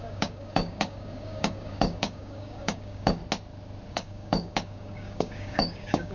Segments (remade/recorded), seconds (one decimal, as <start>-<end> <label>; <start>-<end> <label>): 0.0-3.2 remade; 3.2-3.9 recorded; 3.9-6.1 remade